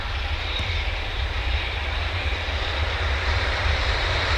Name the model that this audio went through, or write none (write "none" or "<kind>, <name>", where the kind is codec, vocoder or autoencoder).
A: vocoder, BigVGAN v2